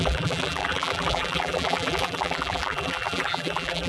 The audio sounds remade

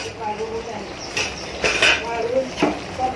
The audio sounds remade